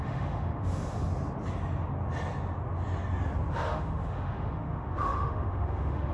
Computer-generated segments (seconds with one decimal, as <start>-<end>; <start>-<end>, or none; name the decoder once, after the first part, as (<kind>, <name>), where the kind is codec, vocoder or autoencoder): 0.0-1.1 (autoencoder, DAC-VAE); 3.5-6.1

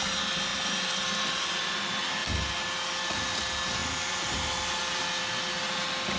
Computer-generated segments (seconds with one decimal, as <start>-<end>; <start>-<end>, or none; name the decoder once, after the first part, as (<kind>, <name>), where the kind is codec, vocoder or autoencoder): none

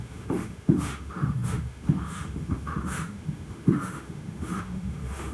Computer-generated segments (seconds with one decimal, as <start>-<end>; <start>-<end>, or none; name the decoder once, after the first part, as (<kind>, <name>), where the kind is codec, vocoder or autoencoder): 0.0-5.3 (autoencoder, DAC-VAE)

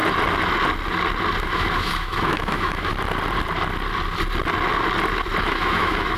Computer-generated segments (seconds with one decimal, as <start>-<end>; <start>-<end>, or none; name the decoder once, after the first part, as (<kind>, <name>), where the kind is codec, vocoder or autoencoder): 1.4-2.9 (autoencoder, DAC-VAE); 5.4-6.2

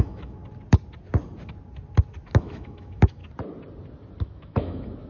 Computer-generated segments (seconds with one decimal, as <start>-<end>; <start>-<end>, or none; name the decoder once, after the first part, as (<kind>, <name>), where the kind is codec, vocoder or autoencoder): 0.0-0.4 (autoencoder, DAC-VAE); 2.4-3.2; 4.2-5.1